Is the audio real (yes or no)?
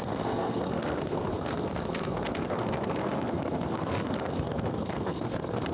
no